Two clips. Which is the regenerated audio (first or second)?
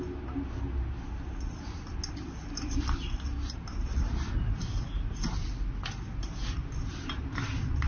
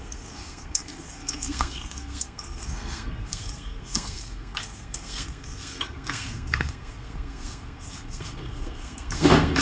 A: second